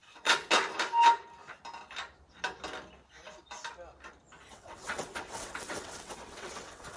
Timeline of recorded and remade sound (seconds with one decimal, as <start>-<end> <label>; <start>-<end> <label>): 0.0-0.5 remade; 0.5-4.5 recorded; 4.5-7.0 remade